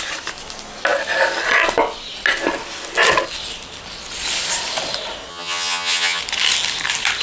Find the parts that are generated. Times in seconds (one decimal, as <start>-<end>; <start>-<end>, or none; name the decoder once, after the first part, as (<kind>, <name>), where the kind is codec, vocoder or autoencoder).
5.3-6.2 (vocoder, HiFi-GAN)